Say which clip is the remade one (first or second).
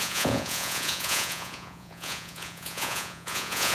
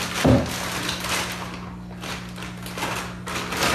first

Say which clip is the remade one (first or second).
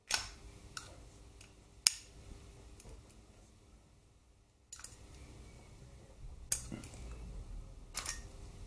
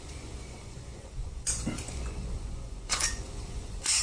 second